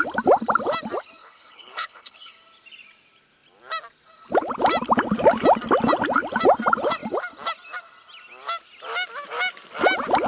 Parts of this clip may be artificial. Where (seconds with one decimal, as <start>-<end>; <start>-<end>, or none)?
1.2-2.3